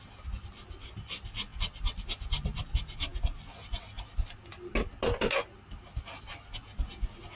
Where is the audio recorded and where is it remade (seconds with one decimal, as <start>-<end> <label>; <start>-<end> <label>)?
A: 0.0-7.4 recorded